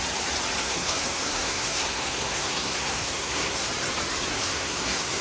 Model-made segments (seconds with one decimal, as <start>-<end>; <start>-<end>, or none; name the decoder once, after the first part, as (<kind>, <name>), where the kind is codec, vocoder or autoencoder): 0.6-3.7 (codec, SNAC); 4.3-5.2